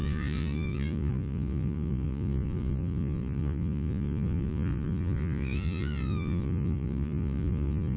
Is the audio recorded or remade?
remade